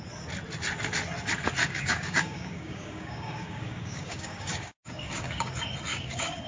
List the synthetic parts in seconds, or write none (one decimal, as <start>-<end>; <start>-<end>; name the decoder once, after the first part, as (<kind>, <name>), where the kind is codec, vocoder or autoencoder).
1.6-5.5 (codec, DAC); 5.9-6.5